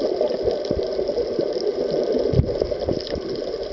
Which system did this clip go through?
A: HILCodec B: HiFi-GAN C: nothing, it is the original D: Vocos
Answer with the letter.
C